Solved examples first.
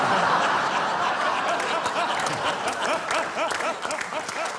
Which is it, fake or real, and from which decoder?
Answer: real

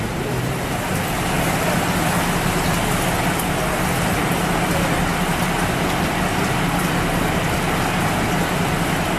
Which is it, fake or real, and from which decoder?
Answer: real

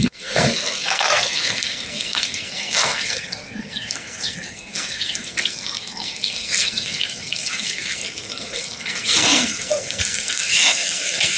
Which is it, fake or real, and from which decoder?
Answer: fake, codec, SNAC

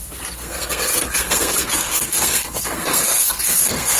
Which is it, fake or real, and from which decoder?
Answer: fake, codec, SNAC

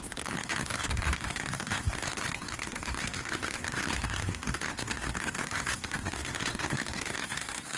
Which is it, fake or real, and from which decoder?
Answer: fake, codec, SNAC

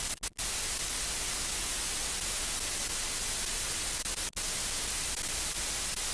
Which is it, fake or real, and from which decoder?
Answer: real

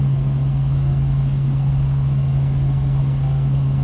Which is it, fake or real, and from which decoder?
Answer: fake, codec, SNAC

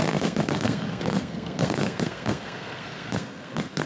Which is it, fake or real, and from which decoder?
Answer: fake, codec, SNAC